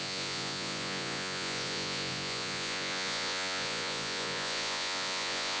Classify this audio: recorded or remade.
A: remade